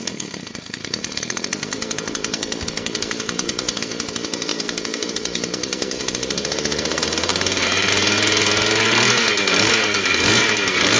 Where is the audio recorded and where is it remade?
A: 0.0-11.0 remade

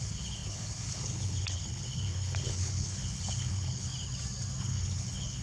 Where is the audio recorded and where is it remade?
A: 0.0-3.9 remade; 3.9-4.6 recorded; 4.6-5.4 remade

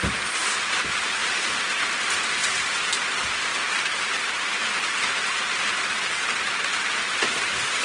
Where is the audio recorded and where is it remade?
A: 0.0-0.4 remade; 0.4-2.0 recorded; 2.0-2.4 remade; 2.4-7.0 recorded; 7.0-7.8 remade

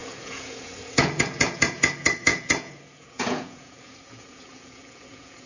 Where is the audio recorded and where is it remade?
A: 0.0-5.5 remade

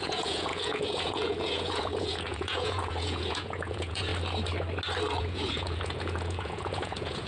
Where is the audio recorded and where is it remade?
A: 0.0-4.1 remade; 4.1-5.2 recorded; 5.2-7.3 remade

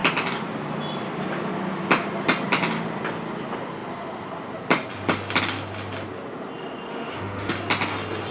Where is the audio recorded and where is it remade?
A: 0.0-6.9 recorded; 6.9-7.5 remade; 7.5-8.3 recorded

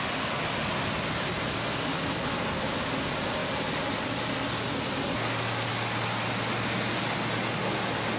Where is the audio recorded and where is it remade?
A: 0.0-8.2 recorded